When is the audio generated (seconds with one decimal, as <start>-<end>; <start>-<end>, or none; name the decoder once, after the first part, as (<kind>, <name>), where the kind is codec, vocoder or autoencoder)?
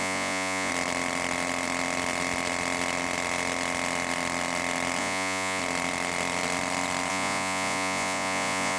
0.0-0.7 (vocoder, Vocos); 5.0-5.6; 7.1-8.8